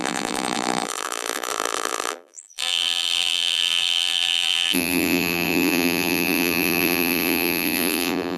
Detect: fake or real fake